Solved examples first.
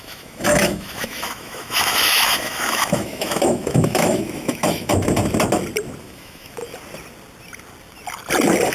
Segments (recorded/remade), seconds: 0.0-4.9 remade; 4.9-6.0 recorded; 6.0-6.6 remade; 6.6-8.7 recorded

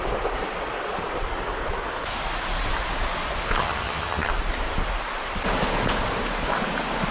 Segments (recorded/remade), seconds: 0.0-3.6 recorded; 3.6-4.3 remade; 4.3-7.1 recorded